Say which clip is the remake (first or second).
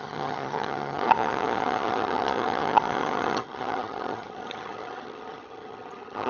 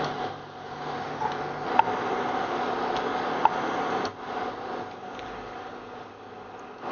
first